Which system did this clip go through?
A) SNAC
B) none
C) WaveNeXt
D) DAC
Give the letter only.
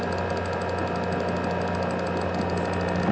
B